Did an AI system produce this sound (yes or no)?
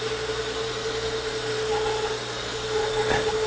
no